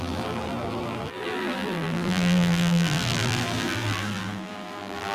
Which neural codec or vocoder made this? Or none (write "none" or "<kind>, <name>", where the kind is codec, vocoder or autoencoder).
vocoder, BigVGAN v2